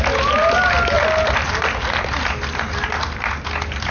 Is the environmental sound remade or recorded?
recorded